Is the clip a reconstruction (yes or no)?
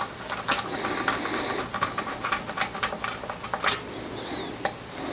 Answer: no